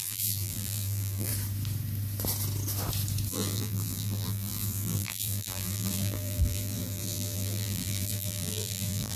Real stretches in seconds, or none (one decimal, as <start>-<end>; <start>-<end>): 1.3-3.3